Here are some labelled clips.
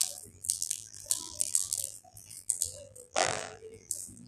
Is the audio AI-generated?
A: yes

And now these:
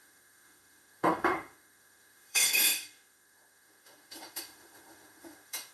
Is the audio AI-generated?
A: yes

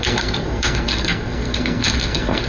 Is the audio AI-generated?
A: yes